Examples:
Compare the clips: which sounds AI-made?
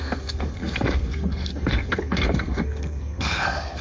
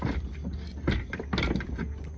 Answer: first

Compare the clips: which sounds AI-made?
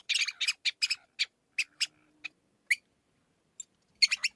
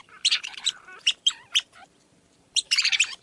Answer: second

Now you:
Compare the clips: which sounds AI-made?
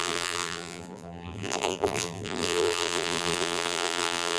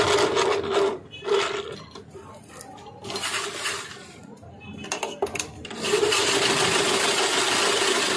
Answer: first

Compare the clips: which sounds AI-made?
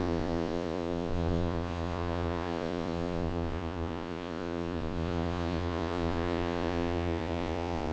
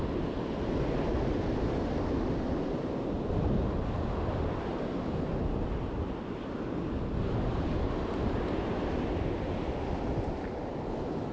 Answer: first